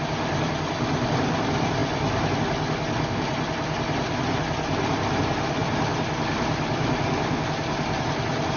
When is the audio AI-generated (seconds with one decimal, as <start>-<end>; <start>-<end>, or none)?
0.0-8.6